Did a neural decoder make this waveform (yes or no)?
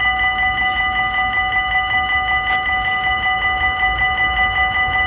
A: no